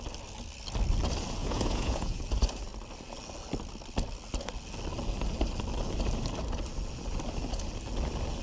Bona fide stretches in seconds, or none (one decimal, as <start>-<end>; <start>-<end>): 0.0-1.4; 2.2-8.4